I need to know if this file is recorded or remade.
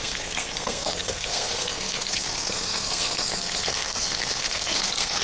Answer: remade